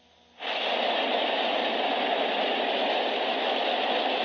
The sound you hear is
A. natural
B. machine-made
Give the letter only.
A